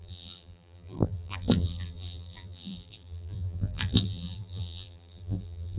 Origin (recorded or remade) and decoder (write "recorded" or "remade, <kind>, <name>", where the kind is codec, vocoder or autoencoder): remade, vocoder, BigVGAN v2